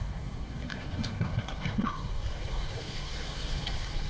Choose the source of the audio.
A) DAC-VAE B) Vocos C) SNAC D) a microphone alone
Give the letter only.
C